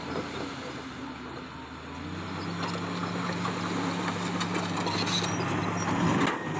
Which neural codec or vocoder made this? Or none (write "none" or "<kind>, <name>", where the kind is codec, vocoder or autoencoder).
none